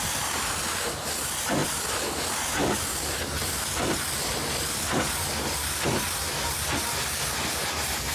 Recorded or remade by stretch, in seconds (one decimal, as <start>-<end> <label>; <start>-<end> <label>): 0.0-8.1 recorded